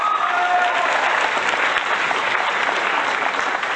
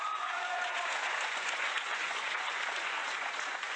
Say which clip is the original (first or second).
first